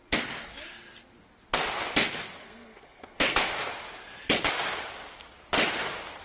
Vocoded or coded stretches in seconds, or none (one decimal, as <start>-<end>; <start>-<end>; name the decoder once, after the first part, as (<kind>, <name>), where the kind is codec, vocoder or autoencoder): 2.4-3.5 (codec, SNAC)